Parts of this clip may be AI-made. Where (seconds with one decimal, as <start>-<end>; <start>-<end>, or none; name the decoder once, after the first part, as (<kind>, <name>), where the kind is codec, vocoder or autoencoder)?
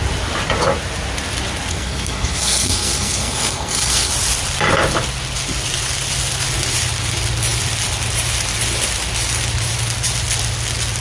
1.7-4.1 (codec, SNAC)